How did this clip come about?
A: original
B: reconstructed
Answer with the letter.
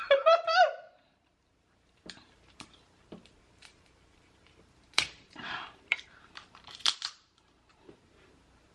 B